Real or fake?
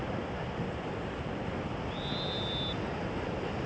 real